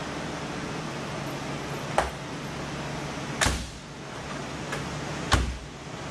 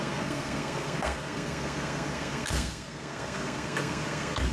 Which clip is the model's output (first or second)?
second